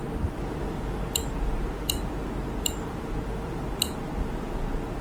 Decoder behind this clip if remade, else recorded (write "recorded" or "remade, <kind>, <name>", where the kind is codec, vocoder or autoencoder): recorded